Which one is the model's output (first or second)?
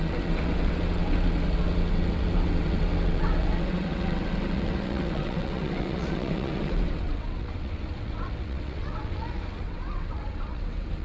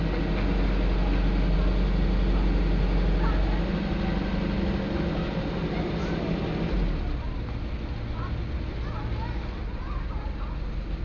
first